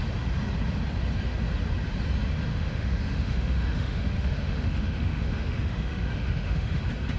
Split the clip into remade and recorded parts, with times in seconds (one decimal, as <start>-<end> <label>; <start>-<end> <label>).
0.0-2.5 recorded; 2.5-6.8 remade; 6.8-7.2 recorded